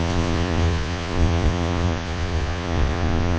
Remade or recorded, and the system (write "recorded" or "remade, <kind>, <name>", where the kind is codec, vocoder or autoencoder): remade, vocoder, Vocos